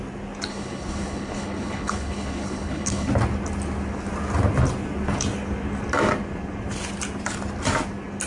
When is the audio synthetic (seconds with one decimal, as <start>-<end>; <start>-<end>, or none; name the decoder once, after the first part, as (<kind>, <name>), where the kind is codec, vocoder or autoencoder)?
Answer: 0.5-3.1 (codec, HILCodec)